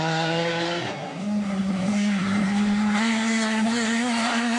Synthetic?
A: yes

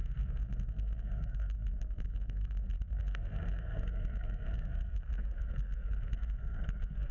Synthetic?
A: yes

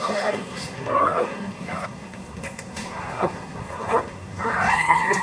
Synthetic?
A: yes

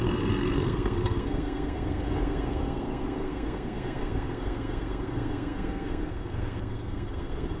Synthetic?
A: yes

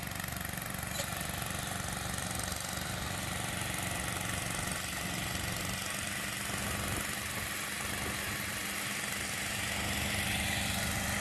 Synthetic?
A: no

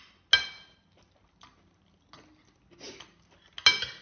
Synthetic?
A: no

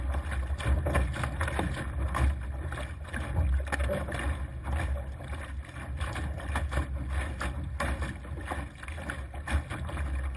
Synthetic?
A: no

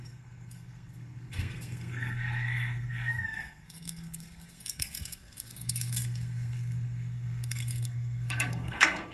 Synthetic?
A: yes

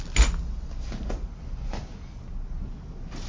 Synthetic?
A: no